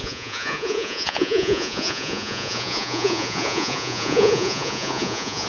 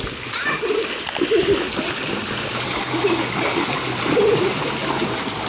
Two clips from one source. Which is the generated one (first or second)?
first